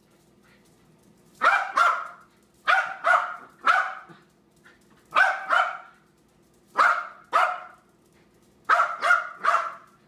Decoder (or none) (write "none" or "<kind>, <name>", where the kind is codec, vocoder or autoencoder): none